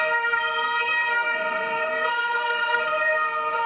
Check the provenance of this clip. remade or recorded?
remade